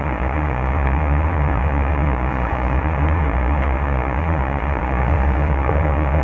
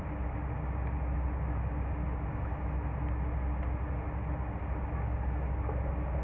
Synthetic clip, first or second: first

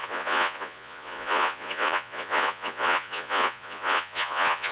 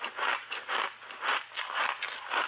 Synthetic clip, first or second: first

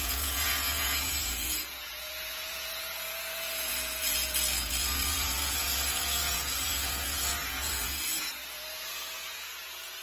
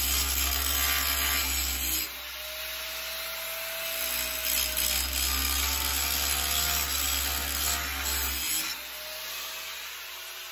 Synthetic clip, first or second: first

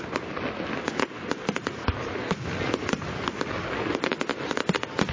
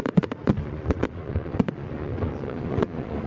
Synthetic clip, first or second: second